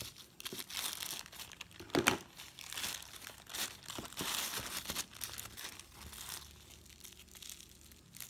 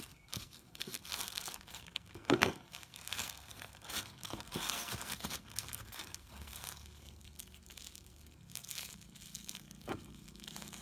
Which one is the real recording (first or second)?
first